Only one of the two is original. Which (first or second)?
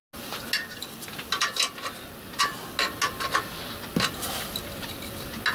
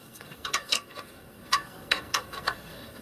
first